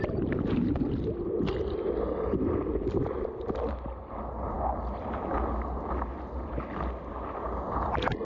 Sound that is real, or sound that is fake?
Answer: real